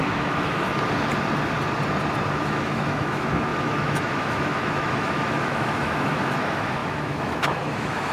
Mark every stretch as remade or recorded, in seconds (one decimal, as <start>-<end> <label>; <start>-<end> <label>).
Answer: 0.0-0.6 remade; 0.6-2.3 recorded; 2.3-8.1 remade